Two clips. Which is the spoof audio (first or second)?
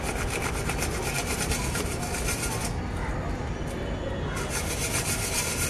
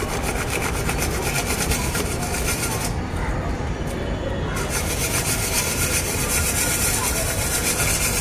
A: second